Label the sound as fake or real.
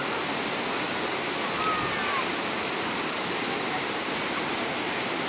real